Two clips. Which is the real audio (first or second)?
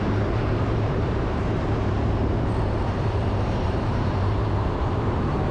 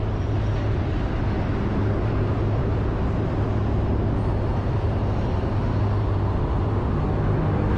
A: second